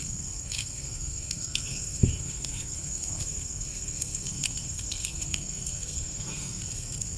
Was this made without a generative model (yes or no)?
no